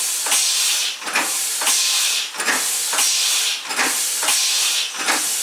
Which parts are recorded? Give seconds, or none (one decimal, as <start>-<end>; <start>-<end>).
0.0-5.4